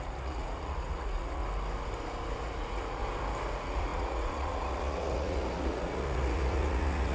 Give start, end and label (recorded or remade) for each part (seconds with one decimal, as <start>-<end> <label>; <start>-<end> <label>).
0.0-1.4 remade; 1.4-2.4 recorded; 2.4-3.0 remade; 3.0-3.5 recorded; 3.5-7.1 remade

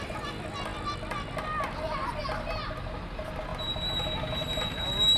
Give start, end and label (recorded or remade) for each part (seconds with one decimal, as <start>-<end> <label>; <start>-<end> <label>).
0.0-5.2 recorded

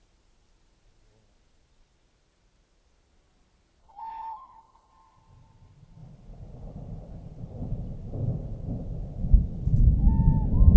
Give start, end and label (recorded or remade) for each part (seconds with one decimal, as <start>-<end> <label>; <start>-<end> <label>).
0.0-3.8 recorded; 3.8-4.9 remade; 4.9-10.8 recorded

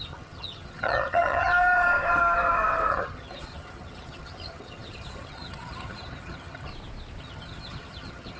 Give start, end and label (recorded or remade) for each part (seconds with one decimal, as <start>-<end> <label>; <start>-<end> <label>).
0.0-1.5 remade; 1.5-2.9 recorded; 2.9-6.7 remade; 6.7-7.2 recorded; 7.2-8.4 remade